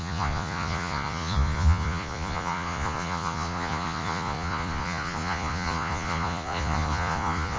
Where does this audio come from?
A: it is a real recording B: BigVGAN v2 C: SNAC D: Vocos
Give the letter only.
D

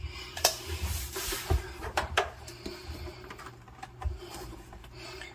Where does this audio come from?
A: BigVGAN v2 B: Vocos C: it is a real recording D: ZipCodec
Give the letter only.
A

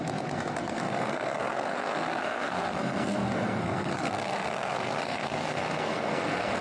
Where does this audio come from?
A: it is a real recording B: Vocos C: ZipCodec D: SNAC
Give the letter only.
D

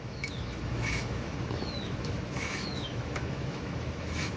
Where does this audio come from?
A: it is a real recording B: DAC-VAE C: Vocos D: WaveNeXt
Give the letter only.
B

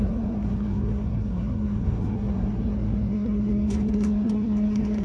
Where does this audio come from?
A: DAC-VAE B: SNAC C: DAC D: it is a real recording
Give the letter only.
B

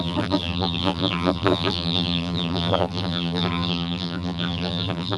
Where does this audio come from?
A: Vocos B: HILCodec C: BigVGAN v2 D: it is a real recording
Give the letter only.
C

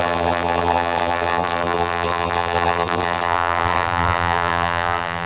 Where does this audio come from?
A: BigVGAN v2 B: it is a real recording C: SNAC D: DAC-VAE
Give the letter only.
A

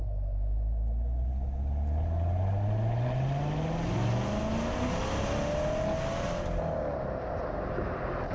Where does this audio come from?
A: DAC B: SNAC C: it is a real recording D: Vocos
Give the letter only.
C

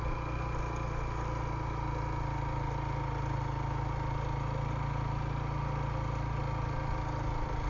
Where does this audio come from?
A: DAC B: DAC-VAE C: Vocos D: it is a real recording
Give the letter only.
D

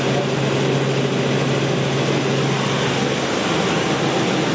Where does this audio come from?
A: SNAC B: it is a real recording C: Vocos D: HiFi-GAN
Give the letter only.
B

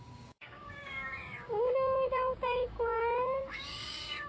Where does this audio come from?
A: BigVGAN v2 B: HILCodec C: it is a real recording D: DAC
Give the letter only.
D